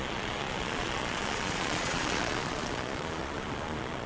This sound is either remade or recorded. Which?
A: remade